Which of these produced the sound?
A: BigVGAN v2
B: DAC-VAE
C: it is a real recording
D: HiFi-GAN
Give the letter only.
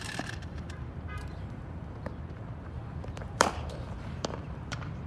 A